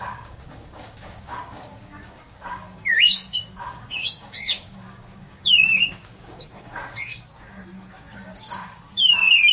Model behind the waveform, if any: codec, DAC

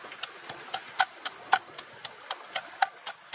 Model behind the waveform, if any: none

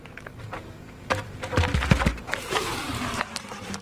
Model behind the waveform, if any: vocoder, BigVGAN v2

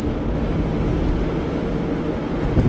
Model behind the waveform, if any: none